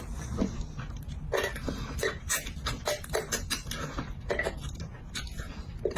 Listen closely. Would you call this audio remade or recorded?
recorded